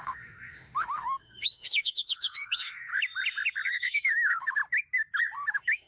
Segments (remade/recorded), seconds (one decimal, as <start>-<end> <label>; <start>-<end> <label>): 0.0-2.9 remade; 2.9-3.7 recorded; 3.7-4.6 remade; 4.6-5.5 recorded; 5.5-5.9 remade